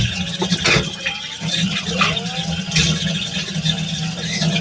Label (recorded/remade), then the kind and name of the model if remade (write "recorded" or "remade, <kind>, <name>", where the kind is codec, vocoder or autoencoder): recorded